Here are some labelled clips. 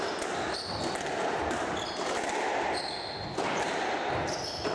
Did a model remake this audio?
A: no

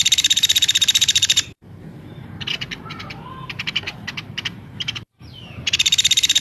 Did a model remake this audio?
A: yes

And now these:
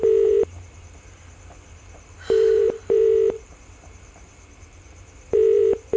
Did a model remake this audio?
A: yes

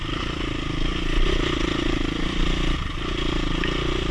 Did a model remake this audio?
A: yes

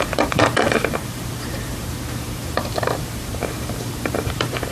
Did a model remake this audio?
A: yes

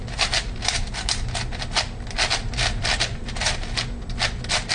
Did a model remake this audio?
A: no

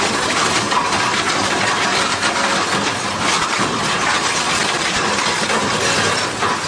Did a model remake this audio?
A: no